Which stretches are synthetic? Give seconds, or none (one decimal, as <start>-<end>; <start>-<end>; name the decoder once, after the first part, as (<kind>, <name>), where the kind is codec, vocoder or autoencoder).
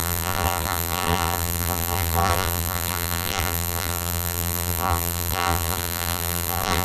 0.0-6.8 (vocoder, BigVGAN v2)